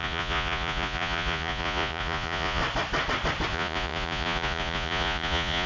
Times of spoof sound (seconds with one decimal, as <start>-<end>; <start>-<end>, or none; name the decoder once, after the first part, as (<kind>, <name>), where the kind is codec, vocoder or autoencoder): 0.0-2.6 (vocoder, Vocos); 3.5-5.7